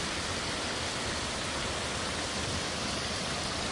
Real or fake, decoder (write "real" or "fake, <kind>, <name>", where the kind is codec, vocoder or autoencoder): real